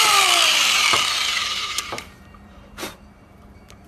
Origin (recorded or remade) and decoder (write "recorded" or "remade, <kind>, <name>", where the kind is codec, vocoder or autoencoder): remade, vocoder, BigVGAN v2